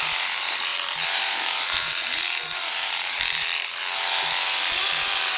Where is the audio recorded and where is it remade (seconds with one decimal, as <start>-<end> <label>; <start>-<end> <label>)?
0.0-5.4 remade